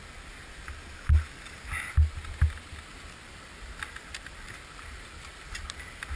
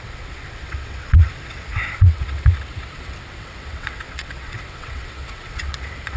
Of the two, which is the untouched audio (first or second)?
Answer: first